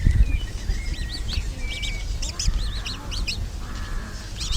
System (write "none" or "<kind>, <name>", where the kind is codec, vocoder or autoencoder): none